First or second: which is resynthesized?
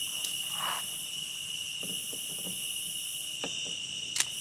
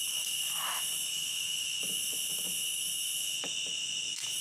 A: second